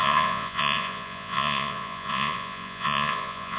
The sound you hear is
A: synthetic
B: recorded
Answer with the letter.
A